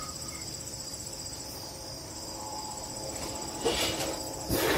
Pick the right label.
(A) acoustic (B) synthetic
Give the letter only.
B